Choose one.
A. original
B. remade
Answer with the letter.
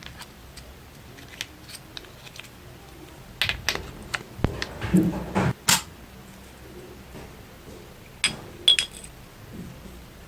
A